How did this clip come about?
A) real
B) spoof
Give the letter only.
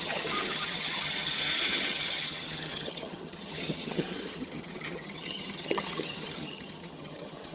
B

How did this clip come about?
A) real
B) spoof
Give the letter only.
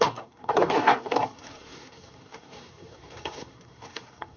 B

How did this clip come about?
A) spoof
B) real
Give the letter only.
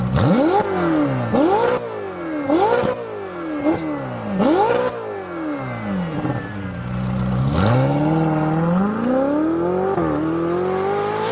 B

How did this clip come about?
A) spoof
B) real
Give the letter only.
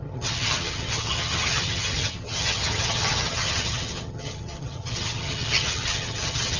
A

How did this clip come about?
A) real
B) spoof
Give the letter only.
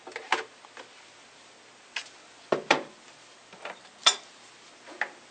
A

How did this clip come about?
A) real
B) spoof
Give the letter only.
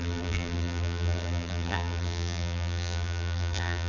B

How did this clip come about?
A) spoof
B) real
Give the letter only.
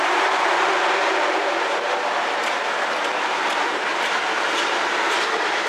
A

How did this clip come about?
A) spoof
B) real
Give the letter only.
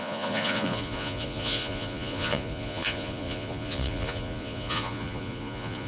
A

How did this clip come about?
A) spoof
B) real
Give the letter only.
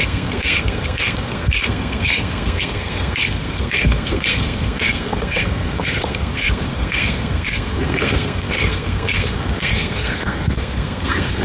A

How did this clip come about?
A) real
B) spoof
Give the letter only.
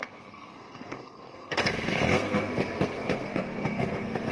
B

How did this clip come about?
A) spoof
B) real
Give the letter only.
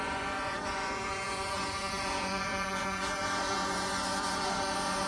A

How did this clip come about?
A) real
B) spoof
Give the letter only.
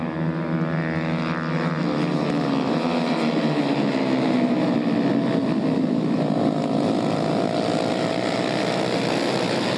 A